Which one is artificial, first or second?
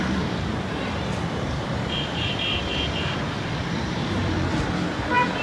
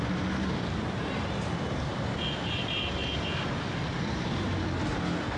first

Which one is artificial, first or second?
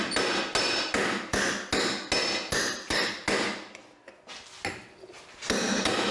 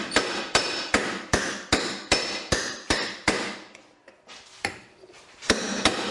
second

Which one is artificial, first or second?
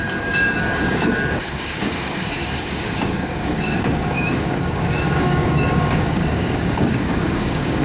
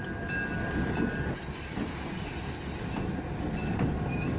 first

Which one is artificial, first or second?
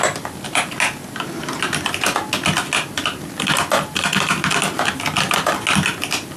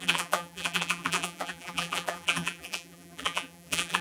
second